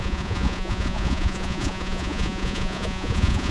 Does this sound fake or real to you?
fake